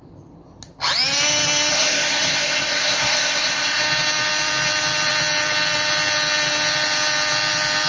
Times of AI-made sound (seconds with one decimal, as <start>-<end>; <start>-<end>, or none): 1.7-3.8

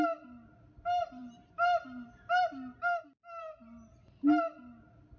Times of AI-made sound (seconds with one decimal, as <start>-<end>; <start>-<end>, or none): none

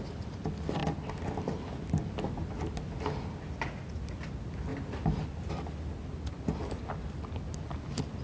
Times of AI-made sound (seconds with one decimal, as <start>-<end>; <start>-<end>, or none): none

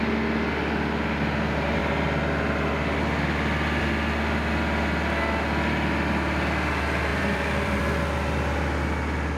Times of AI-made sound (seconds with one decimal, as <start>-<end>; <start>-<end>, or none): 7.1-7.8

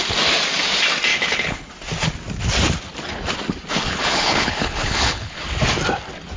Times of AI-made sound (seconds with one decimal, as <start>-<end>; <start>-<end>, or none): 1.1-1.7; 3.7-5.4